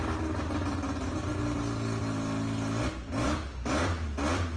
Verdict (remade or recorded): recorded